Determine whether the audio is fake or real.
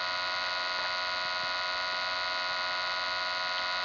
real